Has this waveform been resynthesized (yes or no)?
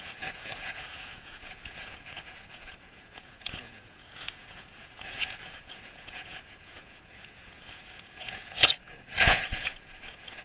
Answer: yes